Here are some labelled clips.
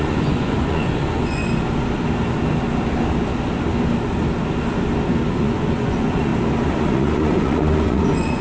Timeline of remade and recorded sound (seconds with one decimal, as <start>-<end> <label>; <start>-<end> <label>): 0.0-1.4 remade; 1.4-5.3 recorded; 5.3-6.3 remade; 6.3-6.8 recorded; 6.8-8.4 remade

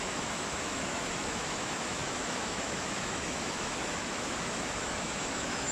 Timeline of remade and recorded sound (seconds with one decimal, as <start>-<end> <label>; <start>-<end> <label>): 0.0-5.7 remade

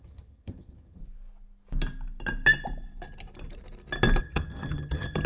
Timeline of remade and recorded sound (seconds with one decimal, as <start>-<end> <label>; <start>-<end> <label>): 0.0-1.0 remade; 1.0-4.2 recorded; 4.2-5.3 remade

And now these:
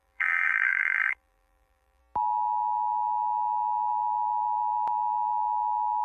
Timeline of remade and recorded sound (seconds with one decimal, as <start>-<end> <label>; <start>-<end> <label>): 0.0-2.0 remade; 2.0-6.0 recorded

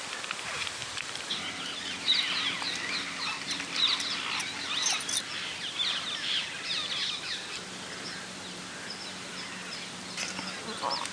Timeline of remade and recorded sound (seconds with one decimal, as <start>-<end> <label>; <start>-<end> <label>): 0.0-0.8 recorded; 0.8-2.2 remade; 2.2-11.1 recorded

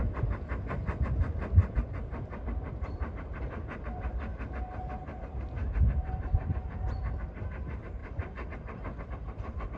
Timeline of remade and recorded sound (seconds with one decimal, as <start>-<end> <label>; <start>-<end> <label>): 0.0-8.0 remade; 8.0-9.0 recorded; 9.0-9.8 remade

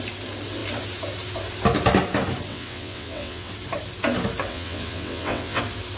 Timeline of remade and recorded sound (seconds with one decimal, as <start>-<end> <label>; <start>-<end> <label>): 0.0-2.5 recorded; 2.5-3.5 remade; 3.5-4.5 recorded; 4.5-5.6 remade; 5.6-6.0 recorded

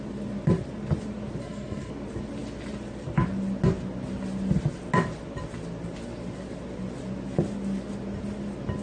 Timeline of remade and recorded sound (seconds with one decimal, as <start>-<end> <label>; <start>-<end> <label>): 0.0-1.4 recorded; 1.4-1.9 remade; 1.9-8.8 recorded